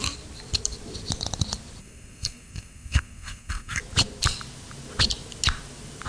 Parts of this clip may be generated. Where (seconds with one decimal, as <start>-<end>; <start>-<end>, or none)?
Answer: 1.8-3.8